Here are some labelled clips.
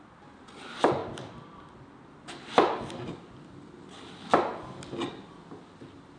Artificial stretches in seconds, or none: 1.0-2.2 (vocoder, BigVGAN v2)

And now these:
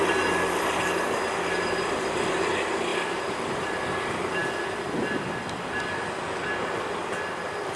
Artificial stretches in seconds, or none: none

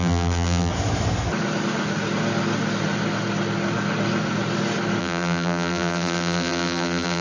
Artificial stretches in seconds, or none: 0.0-0.7 (vocoder, BigVGAN v2); 5.0-7.2

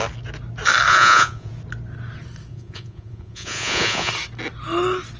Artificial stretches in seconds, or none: 0.9-1.5 (vocoder, Vocos); 2.5-4.1